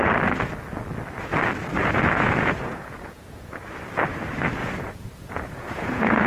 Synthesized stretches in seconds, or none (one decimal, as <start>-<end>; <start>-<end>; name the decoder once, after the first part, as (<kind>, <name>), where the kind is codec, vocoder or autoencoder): 1.8-3.6 (vocoder, Vocos); 4.6-6.3